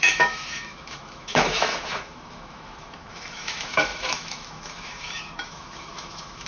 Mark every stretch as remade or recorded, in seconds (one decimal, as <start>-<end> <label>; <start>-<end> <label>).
0.0-6.5 remade